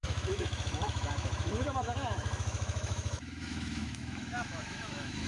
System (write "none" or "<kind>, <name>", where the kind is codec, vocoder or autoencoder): autoencoder, DAC-VAE